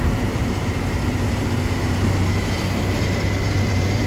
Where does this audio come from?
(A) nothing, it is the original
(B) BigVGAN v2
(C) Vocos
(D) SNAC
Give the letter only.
B